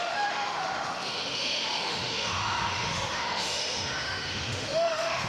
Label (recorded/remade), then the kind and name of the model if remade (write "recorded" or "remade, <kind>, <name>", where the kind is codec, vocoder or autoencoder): remade, autoencoder, DAC-VAE